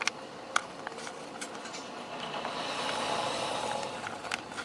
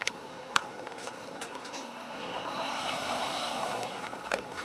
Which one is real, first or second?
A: first